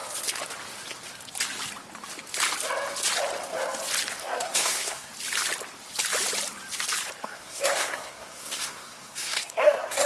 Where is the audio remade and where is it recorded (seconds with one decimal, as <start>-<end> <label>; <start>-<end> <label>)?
0.0-4.2 recorded; 4.2-5.1 remade; 5.1-7.2 recorded; 7.2-10.1 remade